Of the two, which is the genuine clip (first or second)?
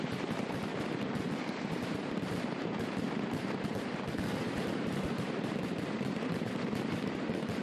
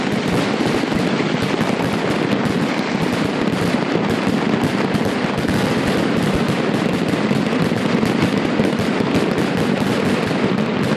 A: second